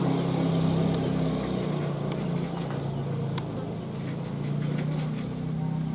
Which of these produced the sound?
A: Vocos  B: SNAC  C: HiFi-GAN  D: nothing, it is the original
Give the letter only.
D